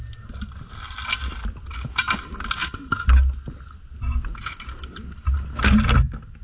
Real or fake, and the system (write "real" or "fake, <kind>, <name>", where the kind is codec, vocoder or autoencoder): real